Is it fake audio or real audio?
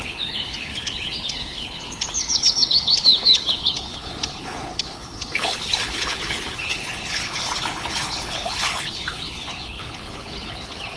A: fake